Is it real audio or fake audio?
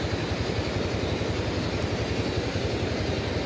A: real